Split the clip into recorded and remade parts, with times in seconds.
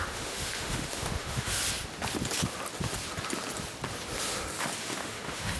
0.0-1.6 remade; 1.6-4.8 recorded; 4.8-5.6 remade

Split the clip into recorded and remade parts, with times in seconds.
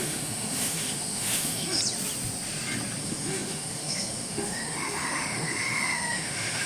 0.0-1.8 remade; 1.8-3.0 recorded; 3.0-6.7 remade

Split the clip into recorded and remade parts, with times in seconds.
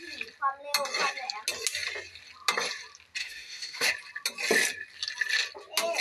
0.0-3.2 recorded; 3.2-3.9 remade; 3.9-6.0 recorded